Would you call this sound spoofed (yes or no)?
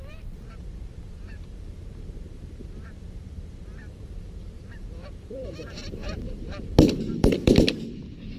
yes